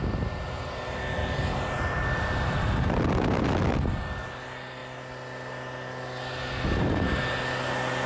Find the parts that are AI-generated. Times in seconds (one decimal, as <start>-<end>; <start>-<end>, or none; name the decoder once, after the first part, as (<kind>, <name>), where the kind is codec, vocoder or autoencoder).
none